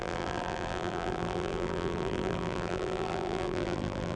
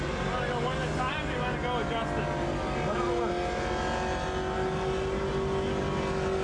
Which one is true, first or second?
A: second